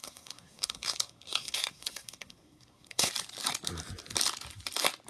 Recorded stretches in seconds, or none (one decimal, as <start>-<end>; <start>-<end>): 3.1-5.1